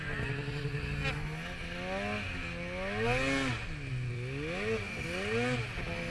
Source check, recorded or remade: recorded